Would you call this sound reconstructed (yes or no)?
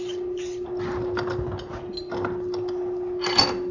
no